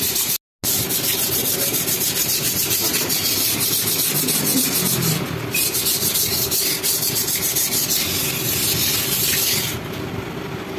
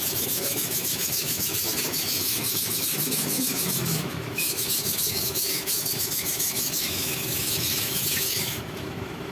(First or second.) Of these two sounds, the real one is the first